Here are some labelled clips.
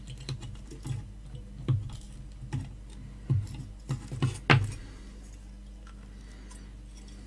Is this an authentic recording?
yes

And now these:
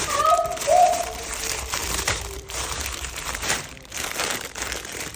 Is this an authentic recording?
no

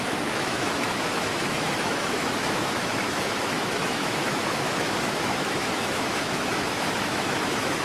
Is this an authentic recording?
no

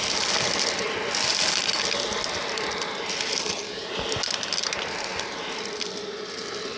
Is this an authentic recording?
yes